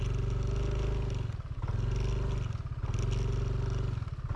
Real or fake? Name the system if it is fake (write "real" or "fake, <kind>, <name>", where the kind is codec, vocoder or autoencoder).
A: real